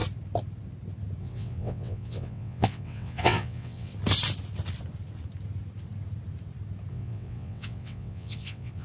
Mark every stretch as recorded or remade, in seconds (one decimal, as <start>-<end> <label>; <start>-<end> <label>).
0.0-1.2 recorded; 1.2-3.9 remade; 3.9-6.9 recorded; 6.9-8.8 remade